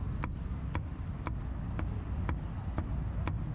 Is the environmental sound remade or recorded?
recorded